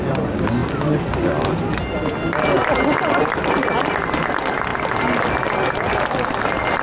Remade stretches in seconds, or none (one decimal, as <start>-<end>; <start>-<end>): none